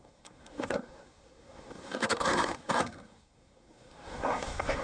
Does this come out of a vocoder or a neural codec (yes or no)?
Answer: yes